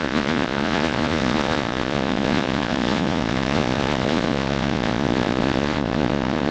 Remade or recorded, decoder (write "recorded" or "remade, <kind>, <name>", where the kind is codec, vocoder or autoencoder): remade, vocoder, Vocos